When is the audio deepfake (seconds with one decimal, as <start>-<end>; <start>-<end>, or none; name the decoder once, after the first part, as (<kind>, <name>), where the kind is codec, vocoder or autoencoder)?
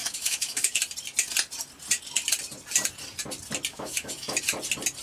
0.0-0.8 (autoencoder, DAC-VAE); 3.7-4.4